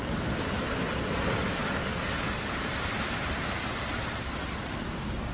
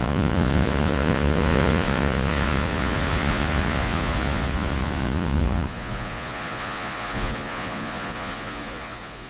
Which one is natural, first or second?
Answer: first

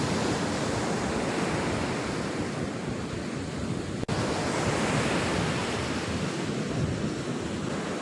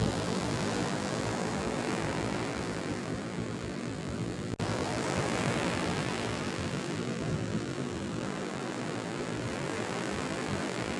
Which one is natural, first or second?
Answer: first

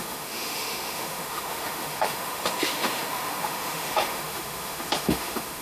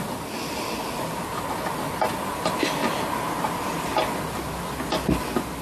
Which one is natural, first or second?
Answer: second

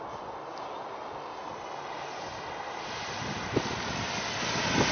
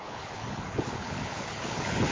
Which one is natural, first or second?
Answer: first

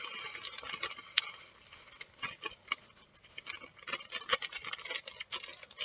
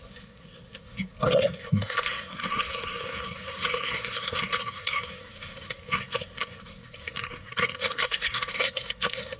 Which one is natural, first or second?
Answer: first